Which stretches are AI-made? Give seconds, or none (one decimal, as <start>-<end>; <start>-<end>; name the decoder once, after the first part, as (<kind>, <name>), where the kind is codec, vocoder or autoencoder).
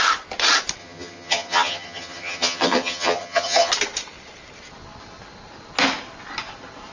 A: 0.8-3.7 (vocoder, HiFi-GAN)